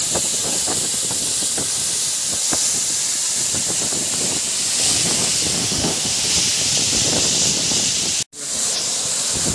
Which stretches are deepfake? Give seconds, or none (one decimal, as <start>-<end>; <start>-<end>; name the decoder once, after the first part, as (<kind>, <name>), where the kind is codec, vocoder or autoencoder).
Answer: 5.6-6.2 (autoencoder, DAC-VAE)